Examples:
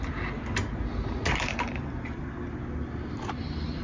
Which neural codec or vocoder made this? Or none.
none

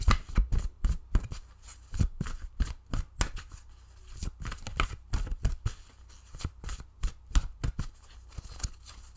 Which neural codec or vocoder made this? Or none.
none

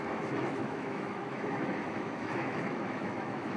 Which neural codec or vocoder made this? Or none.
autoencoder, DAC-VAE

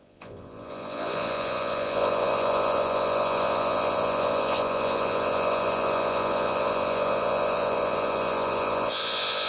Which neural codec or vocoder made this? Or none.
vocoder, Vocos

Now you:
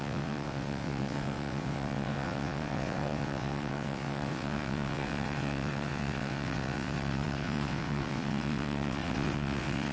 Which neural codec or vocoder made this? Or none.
vocoder, WaveNeXt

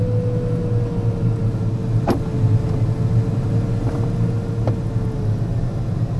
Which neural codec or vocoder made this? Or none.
none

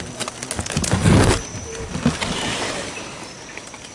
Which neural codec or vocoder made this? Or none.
none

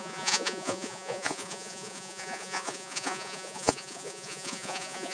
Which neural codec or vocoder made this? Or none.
vocoder, Vocos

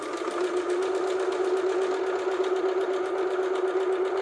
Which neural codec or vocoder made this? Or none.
none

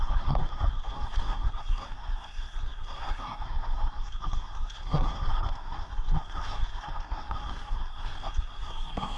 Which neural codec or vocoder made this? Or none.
codec, SNAC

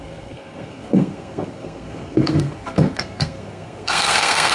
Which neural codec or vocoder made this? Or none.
codec, SNAC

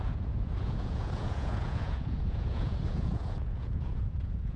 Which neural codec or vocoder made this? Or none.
vocoder, Vocos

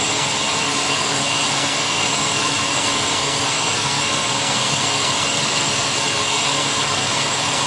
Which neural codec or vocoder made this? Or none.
codec, SNAC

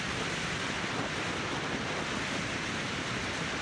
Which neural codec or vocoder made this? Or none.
none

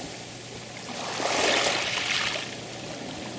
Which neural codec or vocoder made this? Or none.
none